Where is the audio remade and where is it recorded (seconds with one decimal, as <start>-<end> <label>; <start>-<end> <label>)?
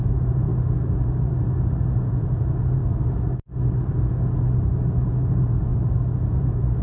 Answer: 0.0-0.5 remade; 0.5-2.0 recorded; 2.0-2.8 remade; 2.8-5.1 recorded; 5.1-5.7 remade; 5.7-6.3 recorded; 6.3-6.8 remade